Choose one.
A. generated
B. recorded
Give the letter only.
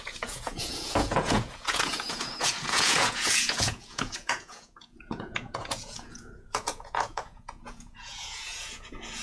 A